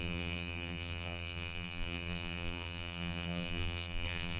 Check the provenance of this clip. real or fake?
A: fake